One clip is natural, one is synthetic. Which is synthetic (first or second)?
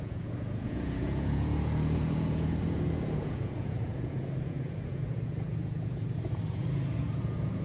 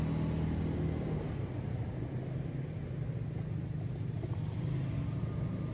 first